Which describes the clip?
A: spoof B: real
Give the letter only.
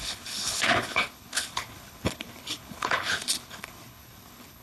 A